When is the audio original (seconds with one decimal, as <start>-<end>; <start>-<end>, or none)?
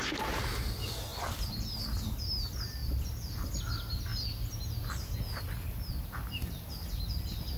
0.0-1.1; 1.8-2.8; 3.6-7.6